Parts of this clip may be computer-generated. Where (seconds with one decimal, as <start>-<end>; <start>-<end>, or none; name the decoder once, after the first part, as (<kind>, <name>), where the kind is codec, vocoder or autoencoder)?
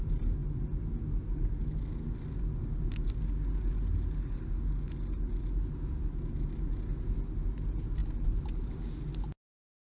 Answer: none